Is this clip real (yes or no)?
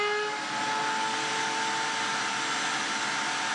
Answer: yes